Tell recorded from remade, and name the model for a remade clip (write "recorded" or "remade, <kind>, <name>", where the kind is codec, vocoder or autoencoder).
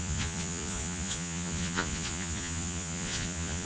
remade, vocoder, Vocos